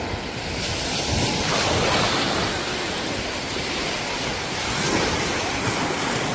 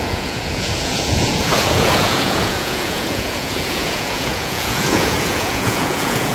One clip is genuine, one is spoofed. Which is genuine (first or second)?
first